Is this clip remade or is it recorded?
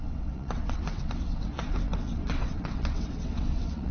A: remade